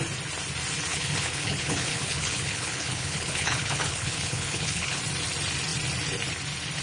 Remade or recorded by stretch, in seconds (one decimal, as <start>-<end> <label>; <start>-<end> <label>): 0.0-0.9 recorded; 0.9-5.0 remade; 5.0-6.8 recorded